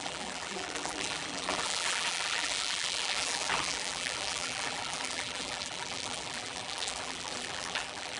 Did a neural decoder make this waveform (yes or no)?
yes